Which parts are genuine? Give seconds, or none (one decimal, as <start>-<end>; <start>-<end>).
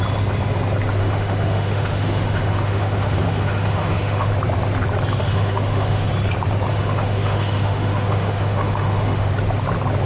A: 0.0-1.0; 4.3-5.2; 6.1-6.7; 9.3-10.1